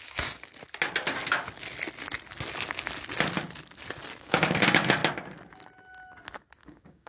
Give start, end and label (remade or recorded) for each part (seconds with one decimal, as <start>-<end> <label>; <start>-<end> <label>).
0.0-0.5 remade; 0.5-4.2 recorded; 4.2-5.0 remade; 5.0-6.6 recorded; 6.6-7.1 remade